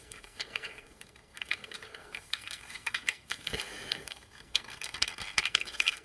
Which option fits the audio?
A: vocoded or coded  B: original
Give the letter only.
A